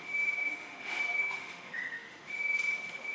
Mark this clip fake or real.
fake